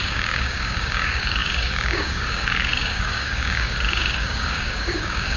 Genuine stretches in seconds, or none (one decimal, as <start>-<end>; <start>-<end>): none